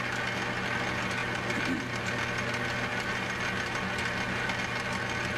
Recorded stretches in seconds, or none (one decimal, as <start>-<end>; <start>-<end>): 0.0-5.4